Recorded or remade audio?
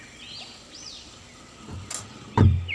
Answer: recorded